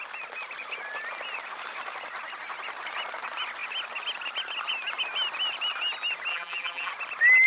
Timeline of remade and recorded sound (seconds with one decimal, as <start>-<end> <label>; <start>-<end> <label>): 0.0-6.3 recorded; 6.3-6.9 remade; 6.9-7.5 recorded